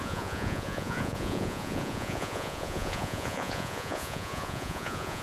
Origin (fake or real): fake